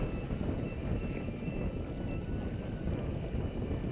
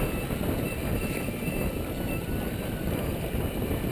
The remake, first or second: second